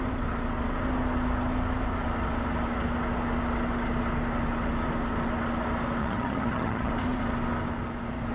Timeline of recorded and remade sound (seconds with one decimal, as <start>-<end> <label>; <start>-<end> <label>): 0.0-6.0 recorded; 6.0-6.9 remade; 6.9-8.3 recorded